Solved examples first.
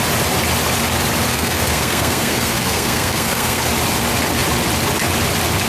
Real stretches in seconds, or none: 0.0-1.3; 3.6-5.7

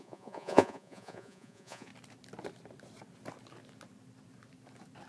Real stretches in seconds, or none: 1.9-5.1

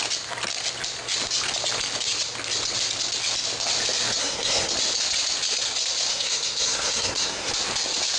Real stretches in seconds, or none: 0.0-4.2; 4.7-6.1; 7.5-8.2

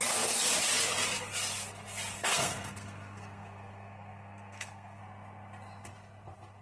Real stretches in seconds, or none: 0.0-2.1; 5.0-6.6

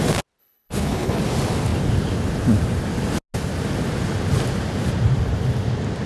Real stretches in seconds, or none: 0.0-0.4; 1.2-6.1